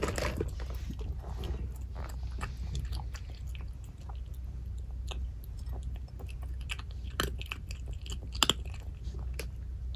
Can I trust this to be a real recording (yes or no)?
yes